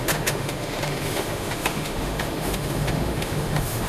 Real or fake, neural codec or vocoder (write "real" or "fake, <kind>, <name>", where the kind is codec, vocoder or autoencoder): fake, autoencoder, DAC-VAE